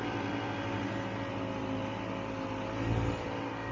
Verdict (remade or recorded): recorded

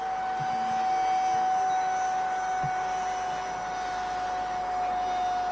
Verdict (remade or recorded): recorded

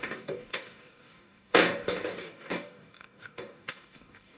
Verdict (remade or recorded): remade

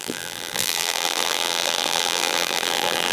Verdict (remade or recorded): remade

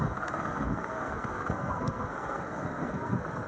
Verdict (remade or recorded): remade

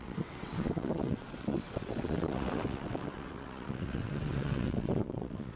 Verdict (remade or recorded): remade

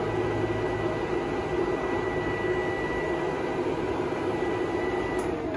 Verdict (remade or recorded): recorded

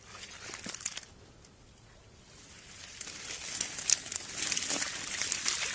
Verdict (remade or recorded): recorded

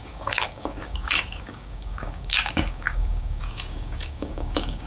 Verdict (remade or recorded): remade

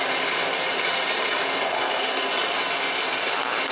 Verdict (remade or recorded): recorded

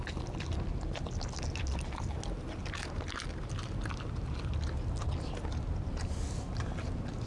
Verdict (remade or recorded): recorded